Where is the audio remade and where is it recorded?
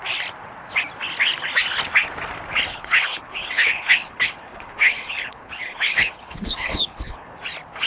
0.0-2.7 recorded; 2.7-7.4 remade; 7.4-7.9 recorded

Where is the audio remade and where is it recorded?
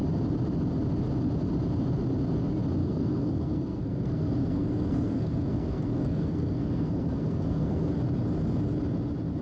0.0-2.8 recorded; 2.8-7.9 remade; 7.9-9.4 recorded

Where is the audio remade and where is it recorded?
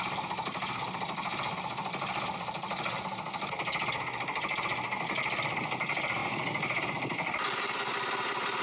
0.0-8.6 recorded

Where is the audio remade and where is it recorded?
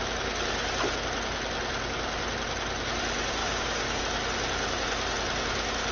0.0-3.4 recorded; 3.4-4.0 remade; 4.0-5.9 recorded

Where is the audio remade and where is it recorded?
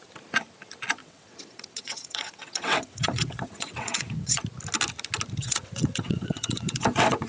0.0-1.0 recorded; 1.0-4.4 remade; 4.4-5.4 recorded; 5.4-7.3 remade